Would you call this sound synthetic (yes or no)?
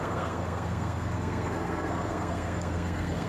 yes